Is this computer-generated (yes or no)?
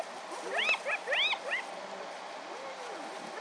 no